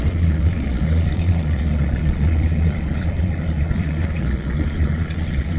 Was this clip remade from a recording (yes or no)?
yes